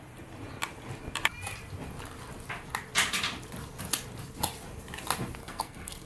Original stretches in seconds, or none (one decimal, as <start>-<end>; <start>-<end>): 0.0-5.4

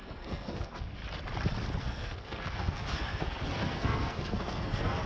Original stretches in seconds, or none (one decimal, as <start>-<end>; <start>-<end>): 1.0-1.8

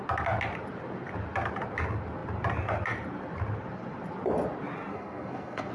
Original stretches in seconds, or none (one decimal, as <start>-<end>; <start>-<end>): 0.0-4.9